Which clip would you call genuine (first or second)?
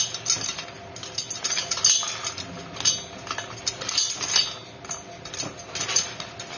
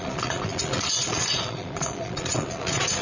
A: first